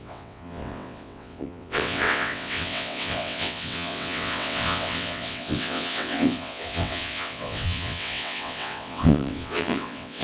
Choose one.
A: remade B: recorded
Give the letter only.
A